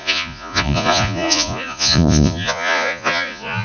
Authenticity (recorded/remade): remade